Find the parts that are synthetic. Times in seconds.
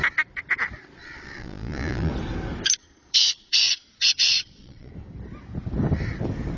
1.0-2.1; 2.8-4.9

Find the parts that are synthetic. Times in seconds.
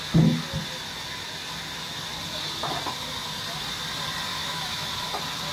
4.3-4.9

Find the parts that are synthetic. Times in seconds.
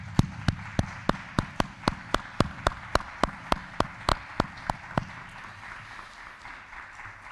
none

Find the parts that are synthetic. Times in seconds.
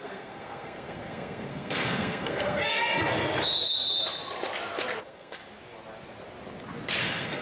0.0-2.8; 5.0-5.4; 7.0-7.4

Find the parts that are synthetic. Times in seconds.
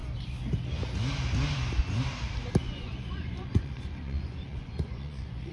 2.6-5.5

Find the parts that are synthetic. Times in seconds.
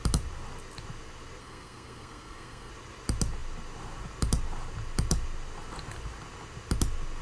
1.4-2.7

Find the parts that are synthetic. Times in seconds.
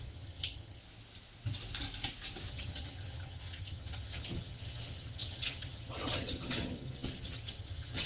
0.0-0.8; 2.5-8.1